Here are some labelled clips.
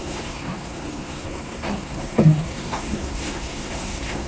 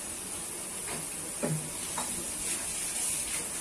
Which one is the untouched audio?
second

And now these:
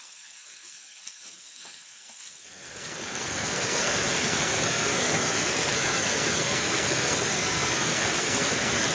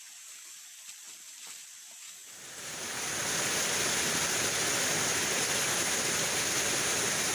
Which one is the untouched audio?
second